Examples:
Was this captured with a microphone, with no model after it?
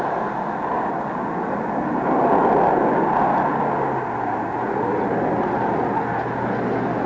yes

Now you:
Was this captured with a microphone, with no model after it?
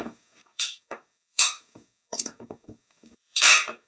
no